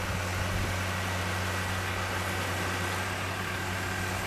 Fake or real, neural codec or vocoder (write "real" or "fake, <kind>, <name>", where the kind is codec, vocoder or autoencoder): real